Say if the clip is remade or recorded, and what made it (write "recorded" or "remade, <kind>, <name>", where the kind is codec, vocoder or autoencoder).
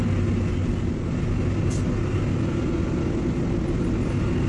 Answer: recorded